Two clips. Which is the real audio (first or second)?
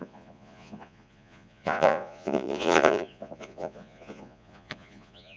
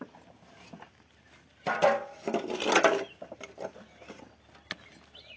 second